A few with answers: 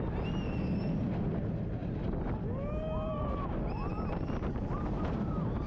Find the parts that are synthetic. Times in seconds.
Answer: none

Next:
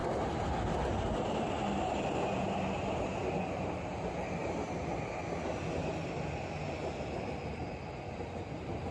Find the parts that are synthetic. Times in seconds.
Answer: 3.3-4.4 (vocoder, BigVGAN v2); 7.4-8.9

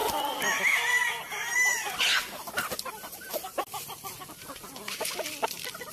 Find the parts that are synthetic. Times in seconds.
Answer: none

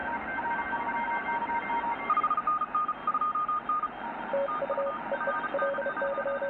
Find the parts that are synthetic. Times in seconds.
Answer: none